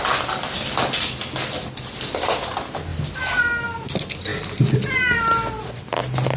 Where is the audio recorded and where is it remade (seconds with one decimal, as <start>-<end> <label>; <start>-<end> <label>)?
0.0-6.4 recorded